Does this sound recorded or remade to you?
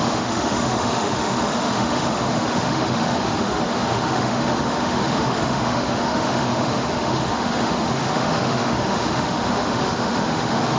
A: remade